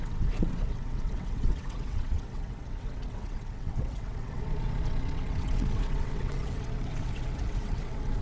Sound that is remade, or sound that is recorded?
remade